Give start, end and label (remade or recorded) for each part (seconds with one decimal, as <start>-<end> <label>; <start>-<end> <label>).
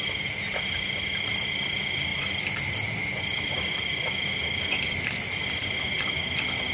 0.0-6.7 recorded